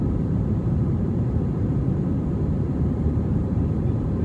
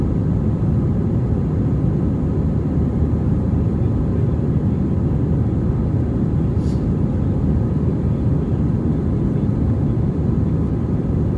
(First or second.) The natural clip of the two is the second